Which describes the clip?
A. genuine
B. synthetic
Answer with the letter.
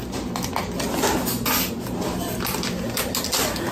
A